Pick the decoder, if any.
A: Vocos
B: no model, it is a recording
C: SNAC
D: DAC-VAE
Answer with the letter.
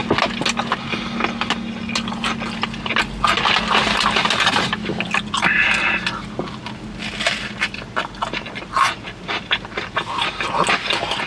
B